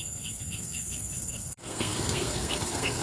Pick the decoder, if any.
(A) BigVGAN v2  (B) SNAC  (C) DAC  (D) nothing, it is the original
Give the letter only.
B